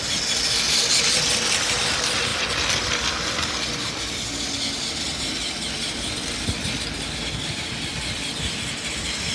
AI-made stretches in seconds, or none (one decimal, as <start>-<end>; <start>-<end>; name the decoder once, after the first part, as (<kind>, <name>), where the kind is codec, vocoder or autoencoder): none